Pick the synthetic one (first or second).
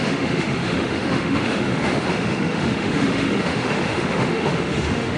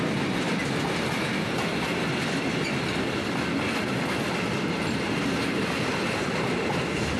first